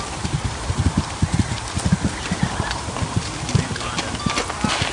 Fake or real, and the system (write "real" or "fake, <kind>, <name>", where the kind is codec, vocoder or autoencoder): real